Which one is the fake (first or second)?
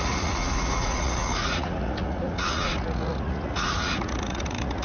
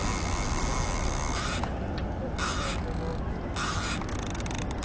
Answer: first